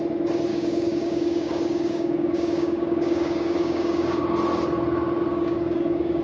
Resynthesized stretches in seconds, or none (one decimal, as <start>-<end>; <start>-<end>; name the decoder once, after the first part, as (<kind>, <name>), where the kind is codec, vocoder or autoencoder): 0.5-4.2 (codec, DAC); 5.3-6.2